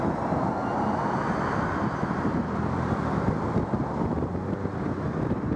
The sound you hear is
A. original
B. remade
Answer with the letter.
A